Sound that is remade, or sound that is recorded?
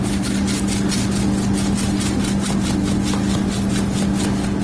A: recorded